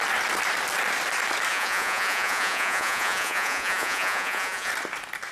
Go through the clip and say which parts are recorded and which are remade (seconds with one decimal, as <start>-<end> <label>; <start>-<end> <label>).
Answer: 0.0-1.5 recorded; 1.5-4.7 remade; 4.7-5.3 recorded